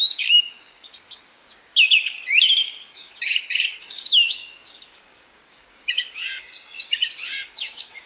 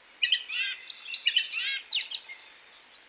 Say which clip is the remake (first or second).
first